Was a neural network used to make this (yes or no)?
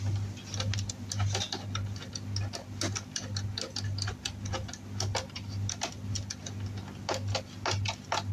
no